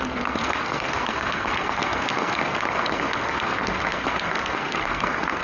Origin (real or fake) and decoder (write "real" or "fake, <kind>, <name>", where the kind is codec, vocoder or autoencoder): fake, codec, SNAC